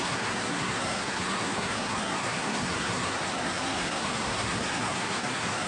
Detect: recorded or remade remade